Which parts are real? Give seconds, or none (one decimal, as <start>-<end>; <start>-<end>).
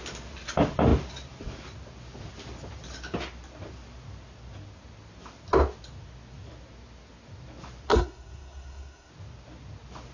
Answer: 0.0-7.9; 9.1-10.1